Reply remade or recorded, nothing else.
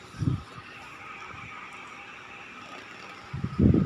recorded